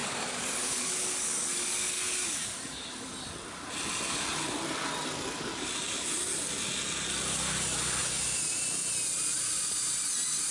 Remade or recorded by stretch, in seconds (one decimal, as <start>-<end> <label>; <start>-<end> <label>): 0.0-3.1 remade; 3.1-10.5 recorded